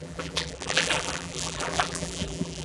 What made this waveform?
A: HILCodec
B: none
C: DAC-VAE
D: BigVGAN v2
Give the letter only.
D